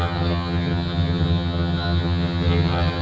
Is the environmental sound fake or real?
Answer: fake